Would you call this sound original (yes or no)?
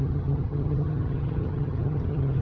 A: no